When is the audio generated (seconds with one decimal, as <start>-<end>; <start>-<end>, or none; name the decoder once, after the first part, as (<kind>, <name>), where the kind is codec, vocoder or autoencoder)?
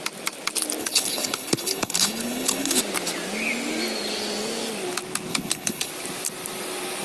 0.8-2.8 (codec, HILCodec); 5.3-5.9